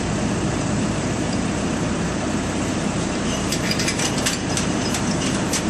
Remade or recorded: remade